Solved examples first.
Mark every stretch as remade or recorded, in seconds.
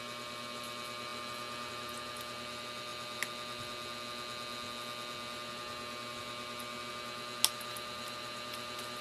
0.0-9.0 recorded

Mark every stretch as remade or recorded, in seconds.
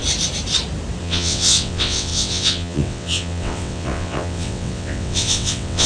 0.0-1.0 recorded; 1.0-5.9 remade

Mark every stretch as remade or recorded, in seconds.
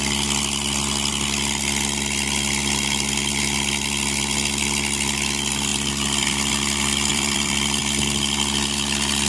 0.0-5.7 recorded; 5.7-6.5 remade; 6.5-7.1 recorded; 7.1-7.8 remade; 7.8-9.3 recorded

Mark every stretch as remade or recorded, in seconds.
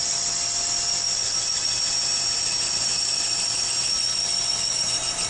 0.0-2.4 recorded; 2.4-2.9 remade; 2.9-4.8 recorded; 4.8-5.3 remade